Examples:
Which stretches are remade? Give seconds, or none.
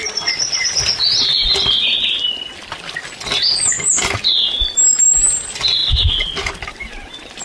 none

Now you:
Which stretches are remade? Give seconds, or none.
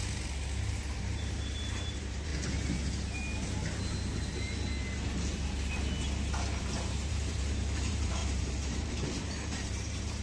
1.0-2.3 (vocoder, BigVGAN v2); 6.6-10.2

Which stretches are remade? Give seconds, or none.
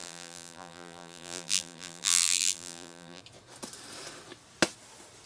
0.0-3.2 (vocoder, BigVGAN v2)